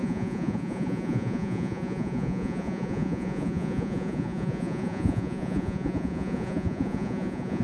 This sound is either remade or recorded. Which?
remade